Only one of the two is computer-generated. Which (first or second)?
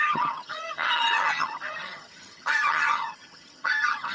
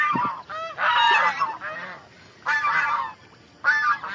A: first